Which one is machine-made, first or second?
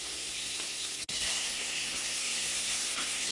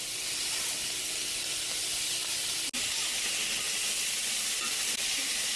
first